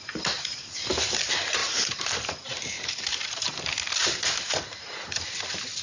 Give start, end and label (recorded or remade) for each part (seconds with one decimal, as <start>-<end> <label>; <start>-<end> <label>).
0.0-1.6 recorded; 1.6-3.6 remade; 3.6-4.0 recorded; 4.0-4.5 remade; 4.5-5.8 recorded